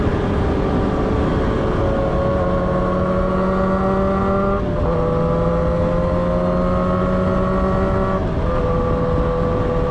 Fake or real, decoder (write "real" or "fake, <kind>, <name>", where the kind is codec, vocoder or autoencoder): real